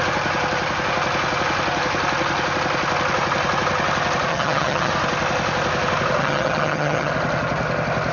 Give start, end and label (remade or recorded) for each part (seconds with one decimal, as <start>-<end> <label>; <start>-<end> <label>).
0.0-4.3 recorded; 4.3-4.9 remade; 4.9-6.2 recorded; 6.2-7.1 remade; 7.1-8.1 recorded